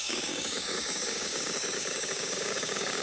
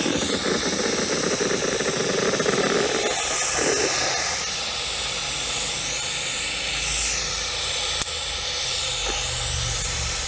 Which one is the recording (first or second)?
second